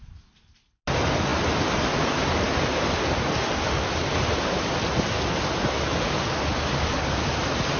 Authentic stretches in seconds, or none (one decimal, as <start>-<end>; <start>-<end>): 0.0-7.8